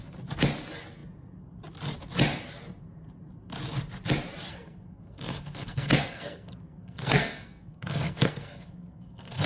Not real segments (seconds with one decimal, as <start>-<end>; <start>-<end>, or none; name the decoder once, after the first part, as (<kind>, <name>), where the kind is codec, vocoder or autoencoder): 4.5-9.5 (codec, SNAC)